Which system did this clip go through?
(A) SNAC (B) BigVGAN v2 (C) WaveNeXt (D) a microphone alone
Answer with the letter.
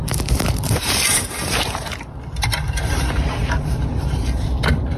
B